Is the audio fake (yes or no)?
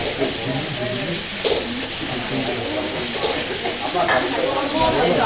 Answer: no